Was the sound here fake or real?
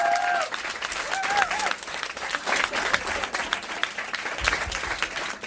real